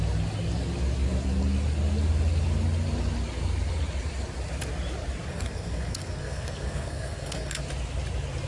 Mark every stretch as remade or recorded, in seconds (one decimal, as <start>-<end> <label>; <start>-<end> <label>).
0.0-5.3 recorded; 5.3-7.6 remade; 7.6-8.5 recorded